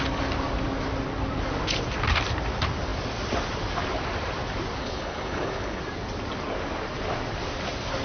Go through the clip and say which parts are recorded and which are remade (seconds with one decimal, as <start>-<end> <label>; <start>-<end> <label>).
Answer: 0.0-4.8 recorded; 4.8-5.8 remade; 5.8-8.0 recorded